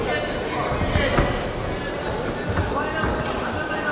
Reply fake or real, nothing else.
real